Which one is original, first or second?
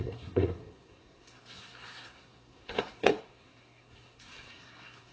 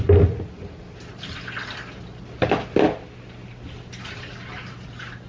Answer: second